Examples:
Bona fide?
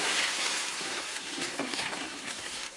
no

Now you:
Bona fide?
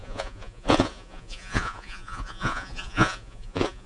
no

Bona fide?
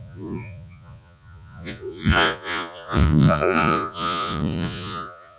no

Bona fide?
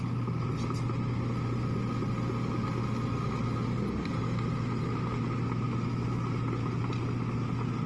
yes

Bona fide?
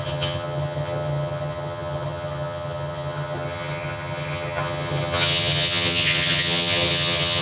no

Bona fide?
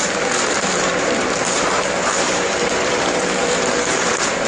no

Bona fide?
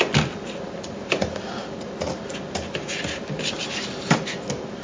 yes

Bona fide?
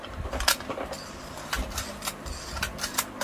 yes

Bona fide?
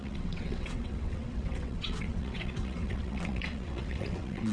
no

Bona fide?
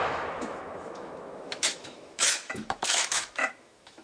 no